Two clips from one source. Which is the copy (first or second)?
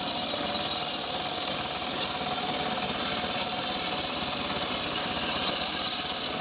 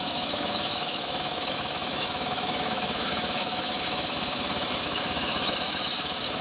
second